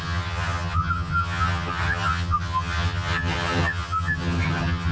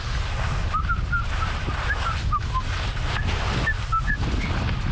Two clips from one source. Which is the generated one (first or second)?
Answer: first